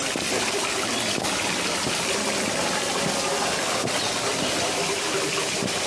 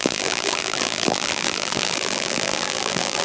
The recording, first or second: first